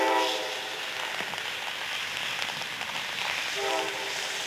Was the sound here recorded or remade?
recorded